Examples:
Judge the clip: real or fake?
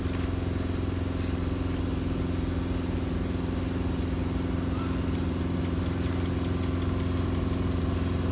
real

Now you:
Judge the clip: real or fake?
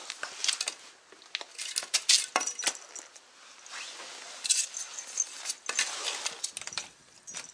real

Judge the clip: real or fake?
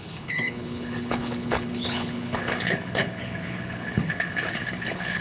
fake